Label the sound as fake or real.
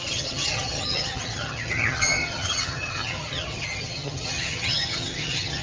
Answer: fake